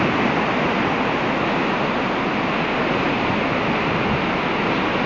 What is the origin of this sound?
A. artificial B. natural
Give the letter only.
B